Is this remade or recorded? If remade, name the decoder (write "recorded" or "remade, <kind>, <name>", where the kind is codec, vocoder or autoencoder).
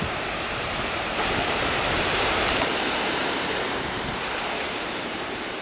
remade, vocoder, BigVGAN v2